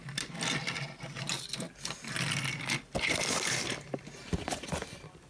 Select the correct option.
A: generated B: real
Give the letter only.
B